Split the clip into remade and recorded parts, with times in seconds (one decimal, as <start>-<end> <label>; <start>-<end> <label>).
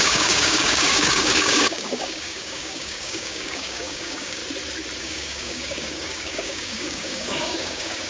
0.0-4.4 remade; 4.4-5.0 recorded; 5.0-8.1 remade